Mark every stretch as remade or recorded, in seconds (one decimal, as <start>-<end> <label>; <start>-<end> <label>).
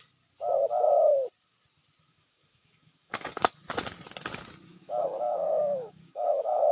0.0-2.1 recorded; 2.1-3.4 remade; 3.4-4.7 recorded; 4.7-6.7 remade